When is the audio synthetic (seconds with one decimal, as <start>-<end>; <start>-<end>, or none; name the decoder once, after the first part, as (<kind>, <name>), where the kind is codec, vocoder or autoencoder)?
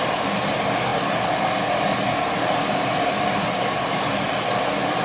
none